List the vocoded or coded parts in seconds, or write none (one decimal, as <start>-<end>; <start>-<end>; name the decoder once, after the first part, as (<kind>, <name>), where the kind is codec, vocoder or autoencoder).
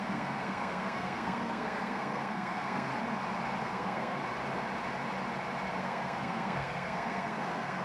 0.0-2.9 (codec, SNAC); 3.6-4.2; 5.8-7.8